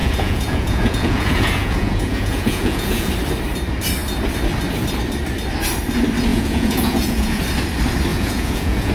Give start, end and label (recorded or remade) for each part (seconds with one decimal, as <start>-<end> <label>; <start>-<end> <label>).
0.0-3.1 remade; 3.1-6.3 recorded; 6.3-7.4 remade; 7.4-8.1 recorded; 8.1-8.9 remade